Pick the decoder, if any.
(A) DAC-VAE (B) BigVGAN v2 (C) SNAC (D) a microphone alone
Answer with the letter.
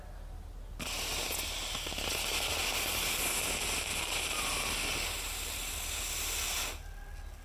D